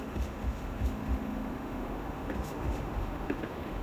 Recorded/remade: remade